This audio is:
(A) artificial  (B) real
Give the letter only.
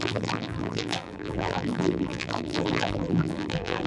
A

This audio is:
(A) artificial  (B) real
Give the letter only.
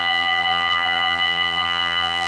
A